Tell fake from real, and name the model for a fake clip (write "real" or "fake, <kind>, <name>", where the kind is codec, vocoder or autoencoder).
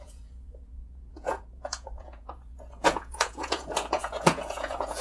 fake, vocoder, Vocos